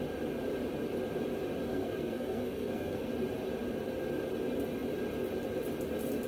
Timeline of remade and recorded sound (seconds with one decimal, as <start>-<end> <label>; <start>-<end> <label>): 0.0-1.7 recorded; 1.7-3.1 remade; 3.1-6.3 recorded